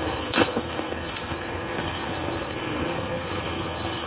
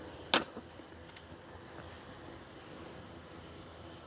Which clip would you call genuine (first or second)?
second